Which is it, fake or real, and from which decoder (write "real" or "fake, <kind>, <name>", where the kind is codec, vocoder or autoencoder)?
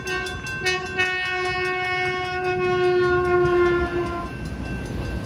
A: real